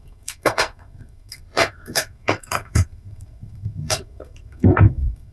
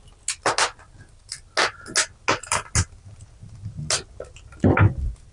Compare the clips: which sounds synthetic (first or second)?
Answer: first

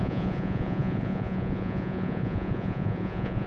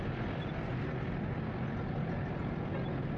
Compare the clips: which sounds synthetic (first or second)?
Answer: first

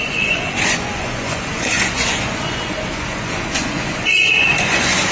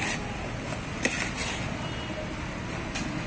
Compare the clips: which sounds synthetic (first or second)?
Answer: first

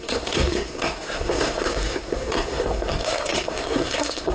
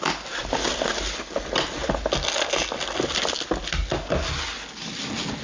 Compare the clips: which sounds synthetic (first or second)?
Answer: first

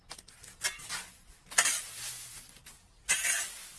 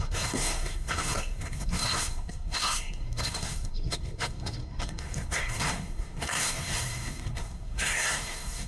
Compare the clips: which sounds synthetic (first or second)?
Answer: second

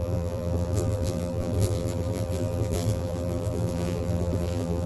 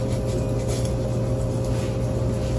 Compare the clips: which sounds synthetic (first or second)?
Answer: first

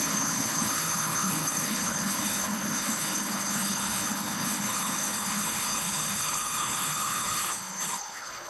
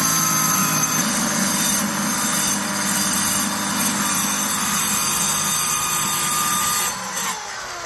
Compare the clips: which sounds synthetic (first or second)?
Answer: first